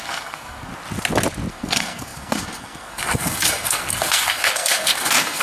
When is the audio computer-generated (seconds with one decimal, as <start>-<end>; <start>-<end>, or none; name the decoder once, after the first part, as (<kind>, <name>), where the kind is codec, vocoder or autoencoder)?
0.0-0.7 (codec, SNAC); 1.5-5.4